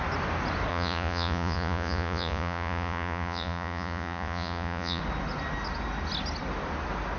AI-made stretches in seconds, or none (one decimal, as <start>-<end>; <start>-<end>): 0.7-5.0